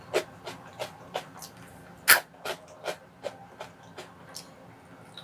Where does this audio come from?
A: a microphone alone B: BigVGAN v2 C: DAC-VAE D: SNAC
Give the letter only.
A